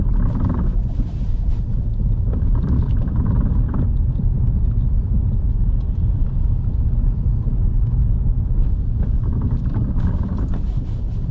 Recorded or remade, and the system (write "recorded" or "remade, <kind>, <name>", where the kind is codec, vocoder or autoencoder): remade, vocoder, BigVGAN v2